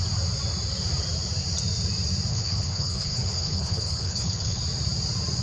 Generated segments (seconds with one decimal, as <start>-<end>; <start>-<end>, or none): 2.3-4.6